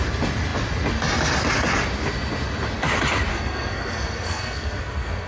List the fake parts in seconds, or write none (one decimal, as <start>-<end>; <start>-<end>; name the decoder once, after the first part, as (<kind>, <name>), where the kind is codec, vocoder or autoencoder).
3.3-5.3 (codec, SNAC)